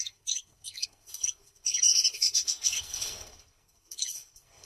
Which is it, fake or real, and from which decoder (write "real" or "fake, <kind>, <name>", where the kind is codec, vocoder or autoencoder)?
fake, codec, SNAC